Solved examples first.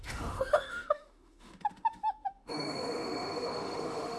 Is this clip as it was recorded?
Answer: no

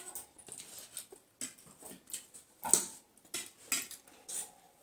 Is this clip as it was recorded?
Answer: yes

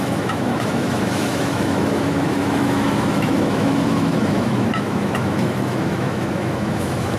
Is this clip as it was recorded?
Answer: no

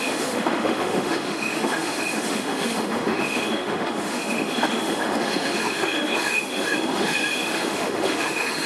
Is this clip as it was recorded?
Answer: no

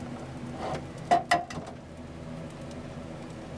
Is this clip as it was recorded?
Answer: yes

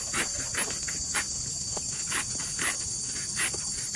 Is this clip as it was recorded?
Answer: yes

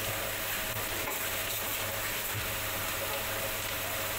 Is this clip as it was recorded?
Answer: yes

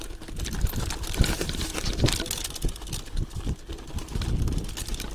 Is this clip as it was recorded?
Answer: yes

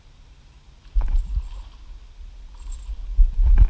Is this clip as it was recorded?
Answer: yes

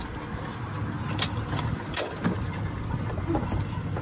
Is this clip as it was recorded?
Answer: yes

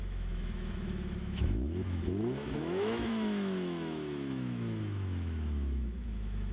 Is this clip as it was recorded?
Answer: no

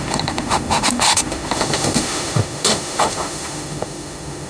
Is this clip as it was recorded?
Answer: no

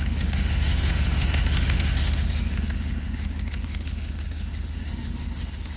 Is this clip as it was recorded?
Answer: no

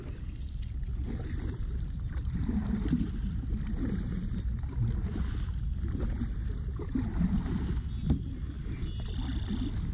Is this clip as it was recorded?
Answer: yes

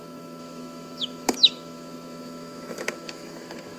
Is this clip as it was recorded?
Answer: no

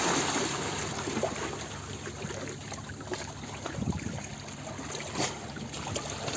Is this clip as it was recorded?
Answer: yes